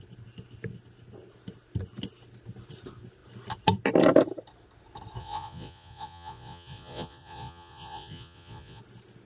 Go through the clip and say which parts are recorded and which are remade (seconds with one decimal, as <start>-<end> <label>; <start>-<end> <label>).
0.0-5.2 recorded; 5.2-8.8 remade; 8.8-9.3 recorded